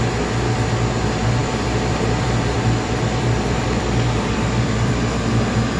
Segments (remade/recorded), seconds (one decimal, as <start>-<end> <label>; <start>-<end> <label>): 0.0-1.4 recorded; 1.4-4.9 remade; 4.9-5.8 recorded